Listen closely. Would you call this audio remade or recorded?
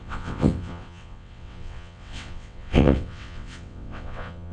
remade